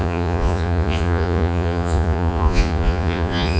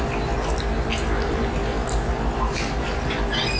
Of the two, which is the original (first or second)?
second